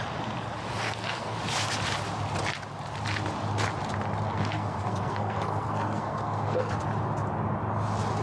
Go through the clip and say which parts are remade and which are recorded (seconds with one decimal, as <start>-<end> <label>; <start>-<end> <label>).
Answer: 0.0-0.8 recorded; 0.8-1.4 remade; 1.4-4.3 recorded; 4.3-6.7 remade; 6.7-8.2 recorded

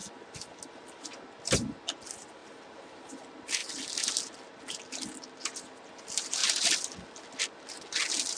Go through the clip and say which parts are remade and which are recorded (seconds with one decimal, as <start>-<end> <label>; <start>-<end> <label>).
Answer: 0.0-8.4 recorded

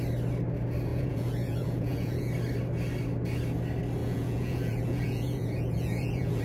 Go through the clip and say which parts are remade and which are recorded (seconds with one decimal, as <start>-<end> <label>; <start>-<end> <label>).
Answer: 0.0-0.9 recorded; 0.9-2.3 remade; 2.3-4.0 recorded; 4.0-6.4 remade

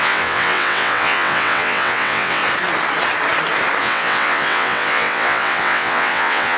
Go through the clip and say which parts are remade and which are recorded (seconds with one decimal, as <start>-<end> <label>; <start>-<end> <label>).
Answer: 0.0-2.4 remade; 2.4-3.8 recorded; 3.8-6.6 remade